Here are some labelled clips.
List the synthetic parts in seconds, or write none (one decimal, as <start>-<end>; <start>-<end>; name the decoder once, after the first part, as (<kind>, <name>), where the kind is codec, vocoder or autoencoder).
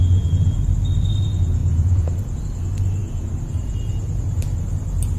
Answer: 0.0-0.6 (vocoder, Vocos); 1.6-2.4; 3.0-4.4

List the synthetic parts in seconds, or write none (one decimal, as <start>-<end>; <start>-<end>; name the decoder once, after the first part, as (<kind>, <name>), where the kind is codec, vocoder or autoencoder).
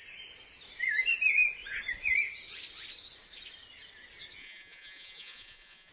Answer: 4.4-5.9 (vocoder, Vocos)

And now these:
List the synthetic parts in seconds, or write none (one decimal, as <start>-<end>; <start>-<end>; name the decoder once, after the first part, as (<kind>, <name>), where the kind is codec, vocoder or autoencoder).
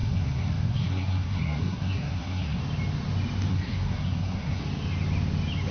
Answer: 0.0-2.6 (codec, SNAC); 3.5-4.6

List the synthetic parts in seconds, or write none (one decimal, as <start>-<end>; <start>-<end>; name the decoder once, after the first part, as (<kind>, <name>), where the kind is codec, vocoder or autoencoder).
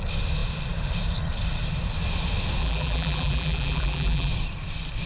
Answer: 2.6-4.3 (vocoder, BigVGAN v2)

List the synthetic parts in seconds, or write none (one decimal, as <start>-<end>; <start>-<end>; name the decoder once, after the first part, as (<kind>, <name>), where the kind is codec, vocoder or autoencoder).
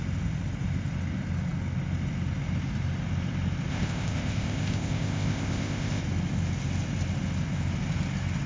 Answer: 3.7-6.0 (codec, ZipCodec)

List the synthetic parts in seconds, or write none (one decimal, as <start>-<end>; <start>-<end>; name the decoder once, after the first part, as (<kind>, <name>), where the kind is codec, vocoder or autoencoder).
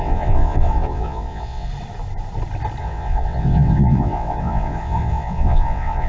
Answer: 0.0-1.7 (vocoder, WaveNeXt); 2.8-6.1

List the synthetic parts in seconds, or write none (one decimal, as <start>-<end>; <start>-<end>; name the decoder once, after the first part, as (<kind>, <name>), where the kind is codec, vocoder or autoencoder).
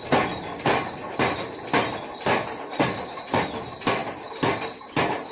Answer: none